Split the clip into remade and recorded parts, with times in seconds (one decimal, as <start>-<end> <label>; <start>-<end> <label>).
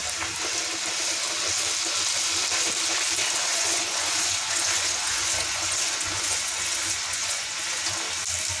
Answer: 0.0-3.5 recorded; 3.5-7.8 remade; 7.8-8.6 recorded